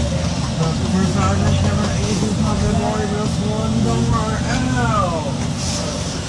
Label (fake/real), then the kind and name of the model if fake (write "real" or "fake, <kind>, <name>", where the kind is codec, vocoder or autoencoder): real